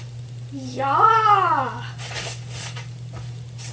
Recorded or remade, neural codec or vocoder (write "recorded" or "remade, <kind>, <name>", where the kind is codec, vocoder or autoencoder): recorded